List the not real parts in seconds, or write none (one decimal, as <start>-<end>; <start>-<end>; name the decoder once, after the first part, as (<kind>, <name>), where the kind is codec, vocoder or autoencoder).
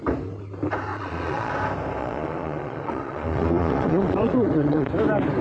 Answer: 0.9-1.5 (vocoder, Vocos); 2.0-4.9